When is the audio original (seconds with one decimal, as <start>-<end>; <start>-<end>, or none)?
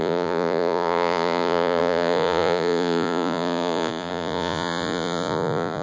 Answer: none